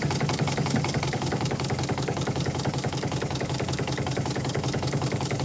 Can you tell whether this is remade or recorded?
remade